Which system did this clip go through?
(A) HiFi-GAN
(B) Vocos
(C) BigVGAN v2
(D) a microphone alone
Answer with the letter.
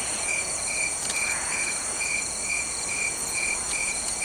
B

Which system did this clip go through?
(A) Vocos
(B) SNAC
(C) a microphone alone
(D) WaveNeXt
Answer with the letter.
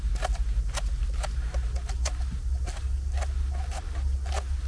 C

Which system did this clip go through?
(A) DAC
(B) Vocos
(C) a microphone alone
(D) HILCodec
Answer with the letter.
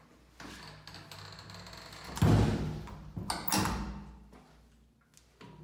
C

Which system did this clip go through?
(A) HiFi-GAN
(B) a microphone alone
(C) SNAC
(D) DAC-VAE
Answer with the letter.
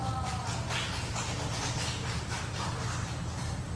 B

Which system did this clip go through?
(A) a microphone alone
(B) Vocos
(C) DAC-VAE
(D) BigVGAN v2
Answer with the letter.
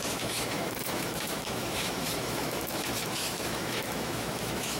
C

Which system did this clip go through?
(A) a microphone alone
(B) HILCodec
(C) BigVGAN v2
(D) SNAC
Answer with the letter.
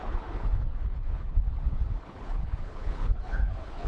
B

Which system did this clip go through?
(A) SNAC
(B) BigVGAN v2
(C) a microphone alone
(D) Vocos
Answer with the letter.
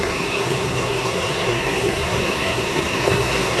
A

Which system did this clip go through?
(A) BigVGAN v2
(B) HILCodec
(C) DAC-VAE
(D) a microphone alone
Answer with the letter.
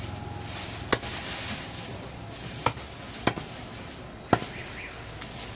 D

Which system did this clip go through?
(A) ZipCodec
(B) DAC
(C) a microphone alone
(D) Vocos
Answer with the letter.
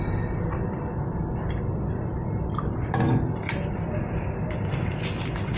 C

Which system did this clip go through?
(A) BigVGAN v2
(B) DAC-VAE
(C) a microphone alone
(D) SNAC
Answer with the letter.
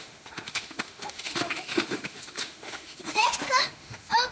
B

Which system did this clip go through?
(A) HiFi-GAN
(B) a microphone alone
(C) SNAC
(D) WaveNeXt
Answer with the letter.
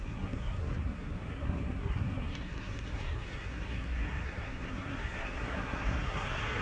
C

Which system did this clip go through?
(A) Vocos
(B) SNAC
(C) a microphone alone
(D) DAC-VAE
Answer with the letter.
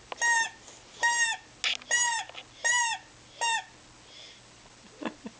C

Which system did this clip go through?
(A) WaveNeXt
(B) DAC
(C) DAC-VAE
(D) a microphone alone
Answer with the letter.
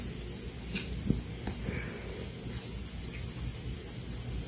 D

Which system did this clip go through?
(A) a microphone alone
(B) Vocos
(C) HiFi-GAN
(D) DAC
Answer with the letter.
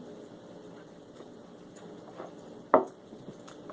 A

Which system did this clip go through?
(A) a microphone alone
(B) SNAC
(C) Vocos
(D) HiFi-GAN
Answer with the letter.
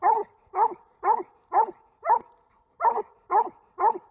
A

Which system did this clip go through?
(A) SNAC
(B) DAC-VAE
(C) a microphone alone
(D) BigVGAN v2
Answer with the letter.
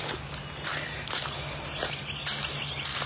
C